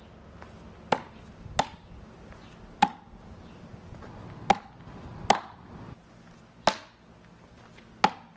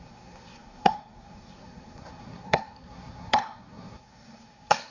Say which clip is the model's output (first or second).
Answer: second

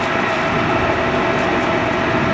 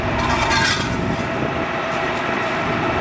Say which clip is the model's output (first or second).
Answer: second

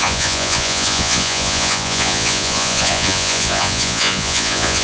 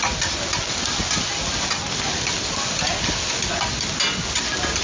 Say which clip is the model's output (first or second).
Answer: first